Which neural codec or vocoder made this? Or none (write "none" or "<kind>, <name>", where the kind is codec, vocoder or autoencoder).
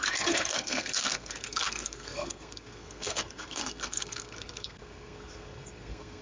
codec, SNAC